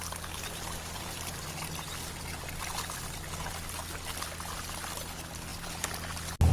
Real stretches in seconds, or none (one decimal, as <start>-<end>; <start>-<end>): 0.0-6.5

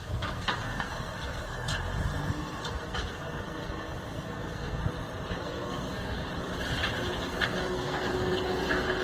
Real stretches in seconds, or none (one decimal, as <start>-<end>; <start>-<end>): 1.7-2.3; 4.8-5.4; 6.2-7.2

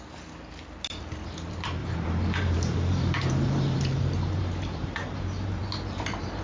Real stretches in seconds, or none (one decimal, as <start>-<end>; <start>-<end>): 0.0-1.8; 5.6-6.4

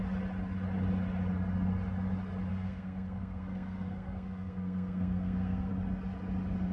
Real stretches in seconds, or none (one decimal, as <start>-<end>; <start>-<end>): 0.0-2.5; 5.7-6.7

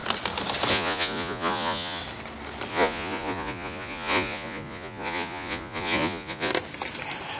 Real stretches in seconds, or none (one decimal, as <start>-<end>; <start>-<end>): 0.0-0.7; 2.0-2.7; 6.5-7.4

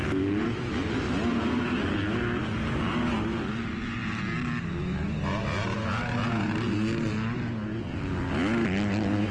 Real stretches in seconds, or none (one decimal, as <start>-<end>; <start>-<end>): 0.0-9.3